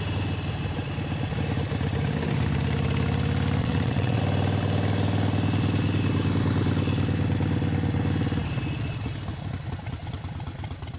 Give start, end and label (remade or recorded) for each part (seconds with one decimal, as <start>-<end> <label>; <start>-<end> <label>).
0.0-3.6 recorded; 3.6-4.2 remade; 4.2-11.0 recorded